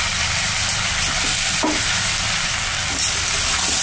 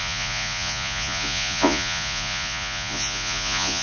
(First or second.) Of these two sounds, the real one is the first